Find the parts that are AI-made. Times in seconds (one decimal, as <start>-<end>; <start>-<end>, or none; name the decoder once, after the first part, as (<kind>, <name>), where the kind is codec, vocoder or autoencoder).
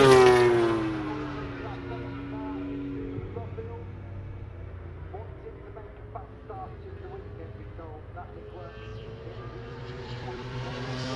8.9-11.2 (vocoder, BigVGAN v2)